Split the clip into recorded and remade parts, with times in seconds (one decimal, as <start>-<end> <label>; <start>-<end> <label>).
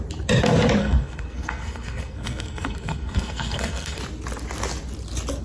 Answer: 0.0-0.8 recorded; 0.8-4.0 remade; 4.0-5.4 recorded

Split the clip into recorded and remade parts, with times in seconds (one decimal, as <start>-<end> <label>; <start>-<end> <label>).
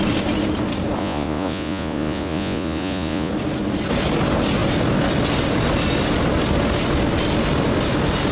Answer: 0.0-1.0 recorded; 1.0-3.3 remade; 3.3-8.3 recorded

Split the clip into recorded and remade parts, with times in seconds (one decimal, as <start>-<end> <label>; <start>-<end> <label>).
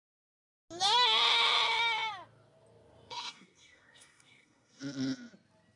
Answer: 0.0-3.1 recorded; 3.1-4.8 remade; 4.8-5.8 recorded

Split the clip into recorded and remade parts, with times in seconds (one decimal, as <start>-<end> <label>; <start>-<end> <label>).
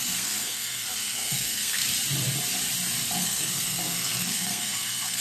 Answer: 0.0-1.8 remade; 1.8-3.2 recorded; 3.2-5.2 remade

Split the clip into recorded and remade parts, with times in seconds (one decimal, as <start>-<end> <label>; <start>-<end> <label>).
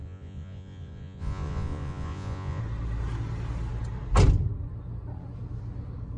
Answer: 0.0-2.6 remade; 2.6-6.2 recorded